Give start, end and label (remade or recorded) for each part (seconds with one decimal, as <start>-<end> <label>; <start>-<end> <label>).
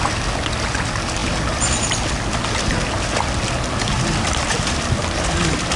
0.0-5.8 recorded